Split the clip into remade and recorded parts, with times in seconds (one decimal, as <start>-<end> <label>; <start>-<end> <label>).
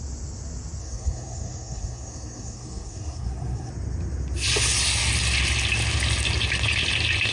0.0-0.8 recorded; 0.8-3.7 remade; 3.7-7.3 recorded